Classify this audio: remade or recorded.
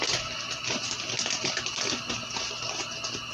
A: recorded